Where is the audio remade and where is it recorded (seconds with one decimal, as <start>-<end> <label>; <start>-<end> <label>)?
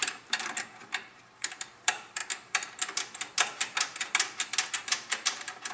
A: 0.0-2.2 remade; 2.2-4.7 recorded; 4.7-5.7 remade